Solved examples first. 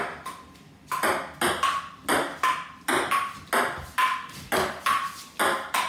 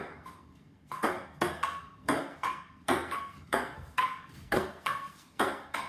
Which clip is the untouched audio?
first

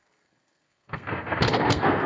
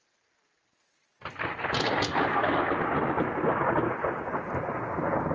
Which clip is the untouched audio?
second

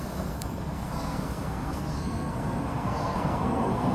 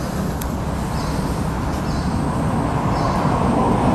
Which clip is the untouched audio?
second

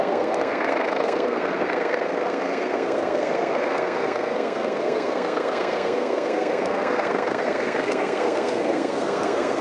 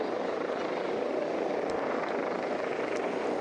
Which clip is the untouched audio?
second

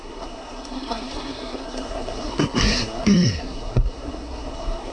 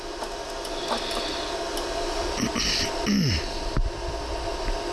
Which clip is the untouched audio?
second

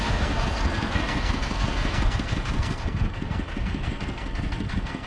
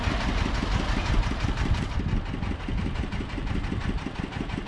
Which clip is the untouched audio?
second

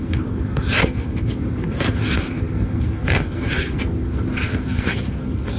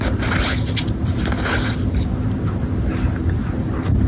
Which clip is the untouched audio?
second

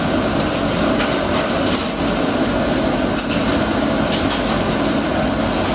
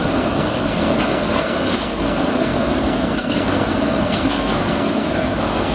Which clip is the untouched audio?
first